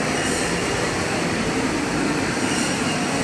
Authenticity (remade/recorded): remade